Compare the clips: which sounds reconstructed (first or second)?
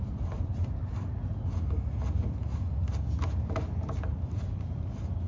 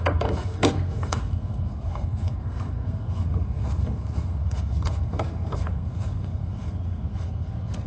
second